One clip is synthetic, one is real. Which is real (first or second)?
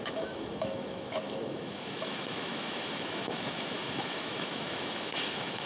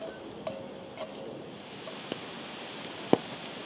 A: second